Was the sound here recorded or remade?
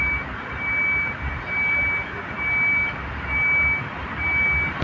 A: recorded